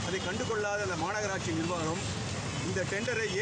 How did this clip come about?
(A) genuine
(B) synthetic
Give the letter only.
A